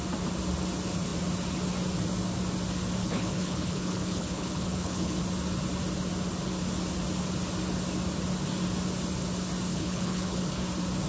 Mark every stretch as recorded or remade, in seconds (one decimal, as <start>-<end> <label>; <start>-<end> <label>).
0.0-3.0 recorded; 3.0-5.2 remade; 5.2-9.7 recorded; 9.7-10.6 remade; 10.6-11.1 recorded